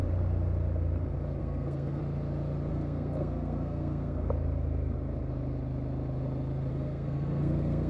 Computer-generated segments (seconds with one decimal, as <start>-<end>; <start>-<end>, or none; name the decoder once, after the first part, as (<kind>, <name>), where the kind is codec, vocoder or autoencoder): 1.4-2.0 (codec, SNAC); 2.7-4.3; 6.7-7.9